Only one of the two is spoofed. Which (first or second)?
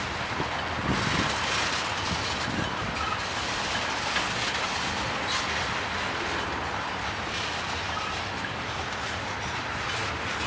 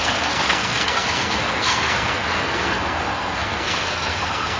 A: second